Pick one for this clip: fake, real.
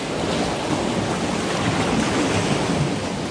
real